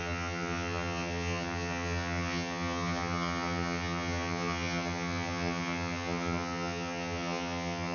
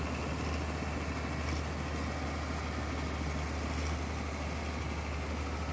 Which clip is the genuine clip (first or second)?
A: second